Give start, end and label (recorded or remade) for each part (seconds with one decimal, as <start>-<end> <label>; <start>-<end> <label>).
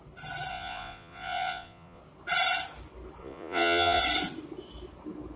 0.0-0.5 recorded; 0.5-2.0 remade; 2.0-3.2 recorded; 3.2-4.0 remade; 4.0-5.4 recorded